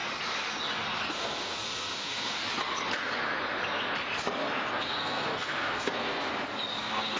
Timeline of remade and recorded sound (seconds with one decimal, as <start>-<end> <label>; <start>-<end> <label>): 0.0-1.1 recorded; 1.1-2.4 remade; 2.4-4.7 recorded; 4.7-6.3 remade; 6.3-6.8 recorded; 6.8-7.2 remade